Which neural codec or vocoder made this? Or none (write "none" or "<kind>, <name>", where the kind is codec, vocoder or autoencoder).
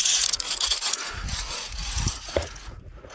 vocoder, Vocos